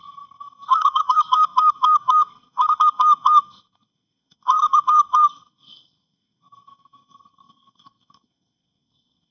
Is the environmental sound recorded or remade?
remade